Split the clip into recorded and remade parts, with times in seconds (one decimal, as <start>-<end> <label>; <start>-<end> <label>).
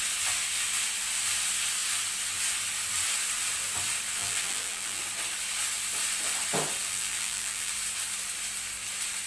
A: 0.0-4.2 recorded; 4.2-5.0 remade; 5.0-6.8 recorded; 6.8-7.7 remade; 7.7-9.3 recorded